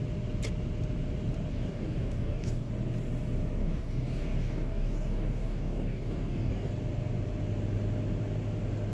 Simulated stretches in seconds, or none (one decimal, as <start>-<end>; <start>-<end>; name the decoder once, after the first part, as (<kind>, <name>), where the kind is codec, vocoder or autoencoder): 1.5-2.7 (codec, DAC); 3.6-6.7

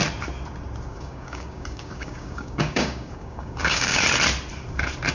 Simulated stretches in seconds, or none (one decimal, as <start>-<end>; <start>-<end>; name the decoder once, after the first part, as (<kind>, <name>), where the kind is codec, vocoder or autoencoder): 0.9-4.0 (codec, DAC)

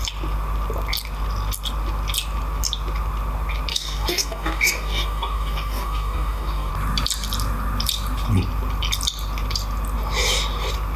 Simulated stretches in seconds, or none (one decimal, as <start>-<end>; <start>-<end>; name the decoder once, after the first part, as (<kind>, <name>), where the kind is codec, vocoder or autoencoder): 3.7-6.7 (codec, DAC)

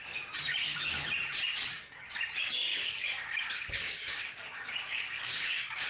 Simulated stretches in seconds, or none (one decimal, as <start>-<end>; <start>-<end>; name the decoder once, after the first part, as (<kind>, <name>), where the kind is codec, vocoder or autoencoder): 2.7-5.9 (codec, DAC)